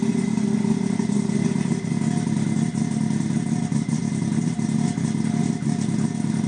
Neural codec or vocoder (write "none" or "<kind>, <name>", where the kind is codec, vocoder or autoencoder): none